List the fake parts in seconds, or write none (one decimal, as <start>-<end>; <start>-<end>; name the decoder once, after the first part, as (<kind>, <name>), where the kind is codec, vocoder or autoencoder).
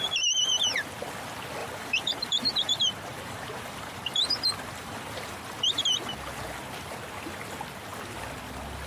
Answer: 1.6-5.8 (vocoder, BigVGAN v2)